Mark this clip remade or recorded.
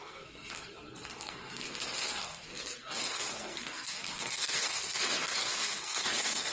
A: remade